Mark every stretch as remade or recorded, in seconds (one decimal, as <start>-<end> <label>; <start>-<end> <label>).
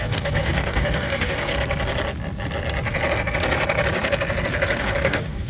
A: 0.0-1.5 remade; 1.5-4.8 recorded; 4.8-5.5 remade